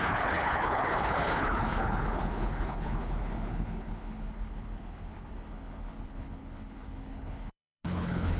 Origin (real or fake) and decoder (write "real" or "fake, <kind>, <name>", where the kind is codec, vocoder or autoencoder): fake, codec, HILCodec